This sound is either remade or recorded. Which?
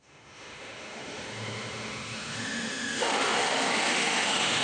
remade